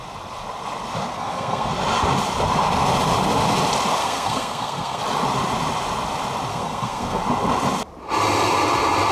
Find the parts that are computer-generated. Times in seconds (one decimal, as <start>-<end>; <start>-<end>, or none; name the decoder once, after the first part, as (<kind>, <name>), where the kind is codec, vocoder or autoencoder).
1.1-1.7 (codec, SNAC); 4.0-5.0; 6.5-7.2